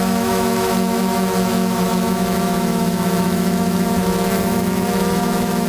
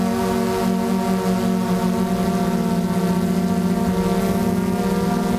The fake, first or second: first